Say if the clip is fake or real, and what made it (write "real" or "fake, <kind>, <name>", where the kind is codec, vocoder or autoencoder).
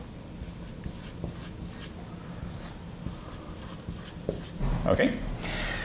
real